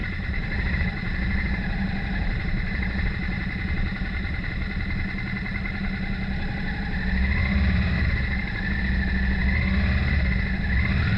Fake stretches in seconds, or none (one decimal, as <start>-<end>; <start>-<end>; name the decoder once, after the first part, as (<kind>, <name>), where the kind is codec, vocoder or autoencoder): 0.0-4.5 (vocoder, BigVGAN v2); 7.4-8.8